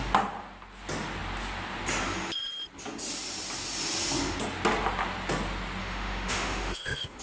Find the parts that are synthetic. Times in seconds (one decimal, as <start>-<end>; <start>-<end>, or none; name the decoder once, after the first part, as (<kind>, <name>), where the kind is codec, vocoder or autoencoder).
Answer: 5.8-7.2 (autoencoder, DAC-VAE)